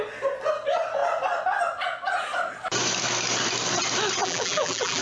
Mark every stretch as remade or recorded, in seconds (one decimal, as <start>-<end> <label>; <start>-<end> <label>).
0.0-4.2 recorded; 4.2-5.0 remade